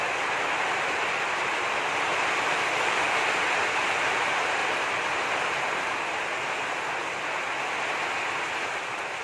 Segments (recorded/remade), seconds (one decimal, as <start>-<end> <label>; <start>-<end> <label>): 0.0-2.1 recorded; 2.1-3.4 remade; 3.4-4.6 recorded; 4.6-5.6 remade; 5.6-9.2 recorded